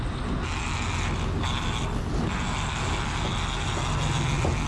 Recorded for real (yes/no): yes